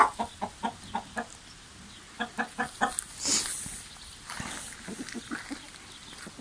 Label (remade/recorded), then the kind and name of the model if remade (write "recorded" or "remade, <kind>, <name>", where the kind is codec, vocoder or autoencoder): recorded